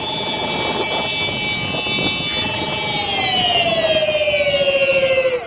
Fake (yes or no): no